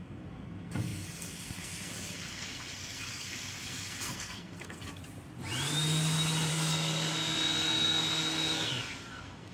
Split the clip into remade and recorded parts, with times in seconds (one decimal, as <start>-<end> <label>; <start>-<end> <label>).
0.0-5.0 remade; 5.0-6.5 recorded; 6.5-9.5 remade